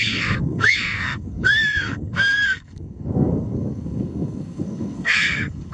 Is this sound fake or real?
fake